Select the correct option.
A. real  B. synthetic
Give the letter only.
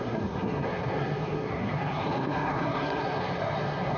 B